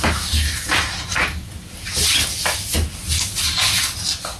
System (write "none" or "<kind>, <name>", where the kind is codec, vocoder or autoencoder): none